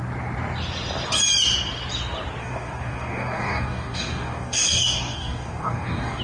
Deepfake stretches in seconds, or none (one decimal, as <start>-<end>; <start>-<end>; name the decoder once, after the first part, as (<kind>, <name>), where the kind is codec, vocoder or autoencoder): 2.4-6.2 (codec, DAC)